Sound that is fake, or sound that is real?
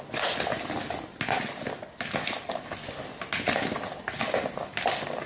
real